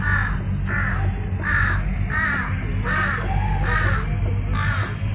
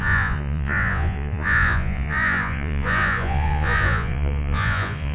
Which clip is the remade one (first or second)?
second